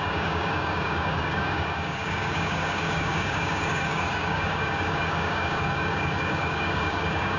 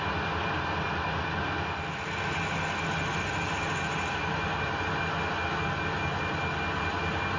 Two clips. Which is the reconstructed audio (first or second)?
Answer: first